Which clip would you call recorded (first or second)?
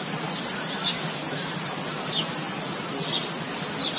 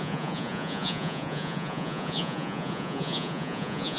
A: first